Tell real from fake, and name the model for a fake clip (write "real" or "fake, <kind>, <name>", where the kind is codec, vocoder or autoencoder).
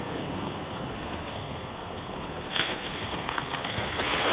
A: fake, codec, SNAC